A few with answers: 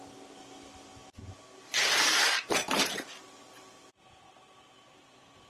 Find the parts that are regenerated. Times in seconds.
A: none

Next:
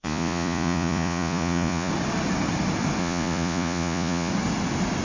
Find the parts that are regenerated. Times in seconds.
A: 0.0-1.9 (vocoder, Vocos); 3.0-4.3

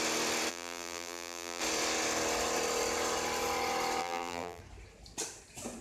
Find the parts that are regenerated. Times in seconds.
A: 0.5-1.6 (vocoder, BigVGAN v2); 4.0-4.6

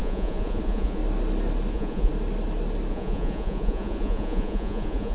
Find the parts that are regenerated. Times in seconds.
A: 0.0-1.0 (vocoder, Vocos); 1.7-2.1; 2.9-5.1

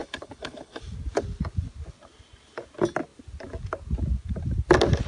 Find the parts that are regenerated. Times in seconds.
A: 0.0-0.8 (codec, HILCodec)

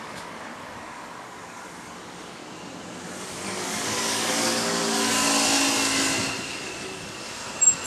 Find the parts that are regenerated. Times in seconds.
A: 0.0-2.4 (codec, DAC); 3.2-5.1; 6.5-7.4